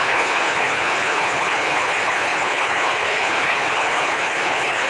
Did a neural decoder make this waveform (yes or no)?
yes